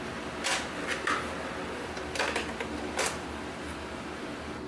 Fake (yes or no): no